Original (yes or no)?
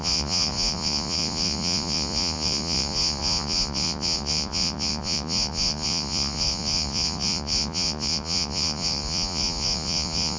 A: no